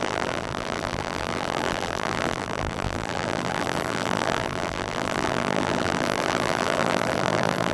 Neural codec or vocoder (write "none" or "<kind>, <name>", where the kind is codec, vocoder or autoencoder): vocoder, BigVGAN v2